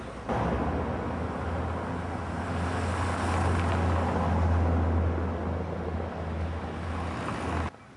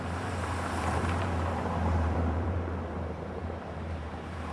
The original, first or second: first